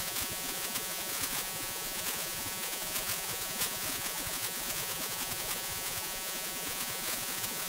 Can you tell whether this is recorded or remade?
remade